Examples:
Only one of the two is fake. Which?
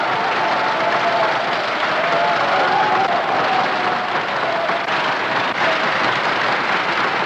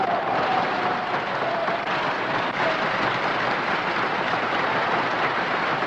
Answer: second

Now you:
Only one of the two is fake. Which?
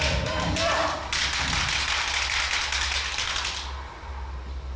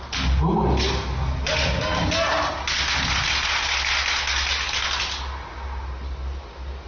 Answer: first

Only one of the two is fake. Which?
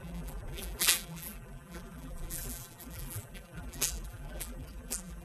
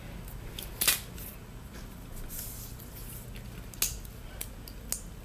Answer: first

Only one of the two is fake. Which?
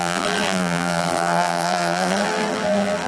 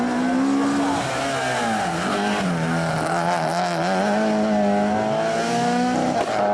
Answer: first